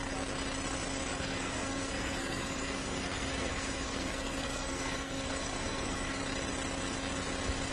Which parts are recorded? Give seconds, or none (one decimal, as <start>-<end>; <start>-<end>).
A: 0.0-1.2; 6.2-7.7

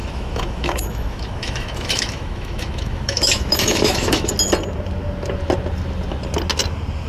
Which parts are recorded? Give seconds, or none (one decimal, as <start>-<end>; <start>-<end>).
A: 4.3-7.1

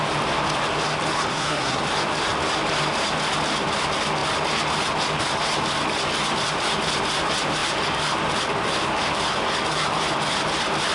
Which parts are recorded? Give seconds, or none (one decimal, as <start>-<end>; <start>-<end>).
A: 0.0-1.3; 1.8-10.9

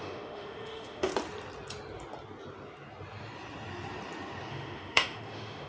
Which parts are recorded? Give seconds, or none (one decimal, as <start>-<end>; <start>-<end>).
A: 1.1-4.5

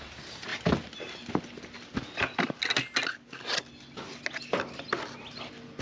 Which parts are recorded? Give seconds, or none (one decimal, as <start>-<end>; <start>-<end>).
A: 0.0-5.8

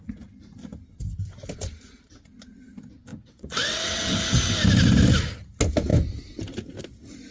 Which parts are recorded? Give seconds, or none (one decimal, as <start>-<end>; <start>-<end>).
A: 0.0-3.1; 4.0-7.3

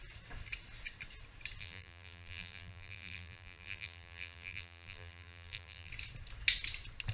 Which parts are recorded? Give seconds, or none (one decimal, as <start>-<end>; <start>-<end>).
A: 0.0-1.6; 5.9-7.1

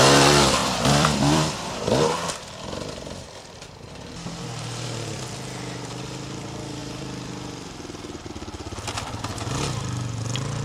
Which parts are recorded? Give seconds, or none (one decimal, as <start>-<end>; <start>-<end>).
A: 0.0-0.6; 3.2-6.8; 8.3-10.6